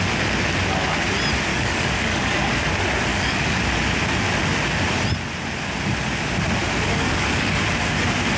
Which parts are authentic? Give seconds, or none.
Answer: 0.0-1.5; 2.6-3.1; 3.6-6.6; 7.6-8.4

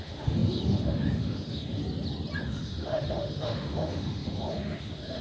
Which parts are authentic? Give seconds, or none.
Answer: 1.8-2.4

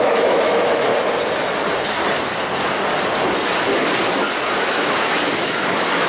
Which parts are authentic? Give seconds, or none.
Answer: 0.9-4.6

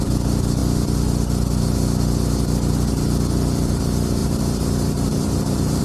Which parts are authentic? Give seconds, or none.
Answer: 0.0-4.2

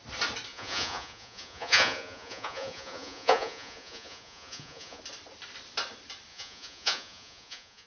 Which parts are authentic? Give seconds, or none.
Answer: 0.0-0.5; 5.0-6.3

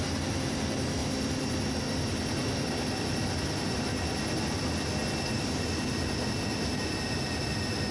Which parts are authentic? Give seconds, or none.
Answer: 0.0-7.9